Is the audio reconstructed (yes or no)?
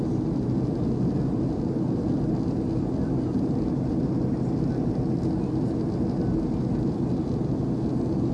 no